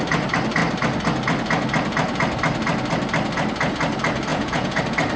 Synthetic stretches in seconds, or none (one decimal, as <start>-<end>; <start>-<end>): 4.3-4.8